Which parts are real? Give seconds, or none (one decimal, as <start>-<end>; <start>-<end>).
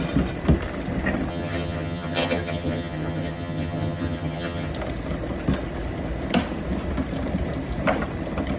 0.0-1.3; 4.7-8.6